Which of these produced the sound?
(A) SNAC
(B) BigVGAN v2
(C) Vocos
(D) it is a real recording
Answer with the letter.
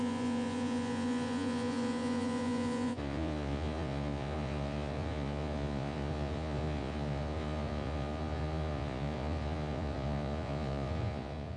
C